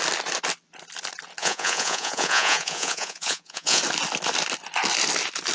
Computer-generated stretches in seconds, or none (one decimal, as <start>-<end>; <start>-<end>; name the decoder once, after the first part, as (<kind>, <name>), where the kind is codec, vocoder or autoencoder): 1.4-3.8 (vocoder, Vocos)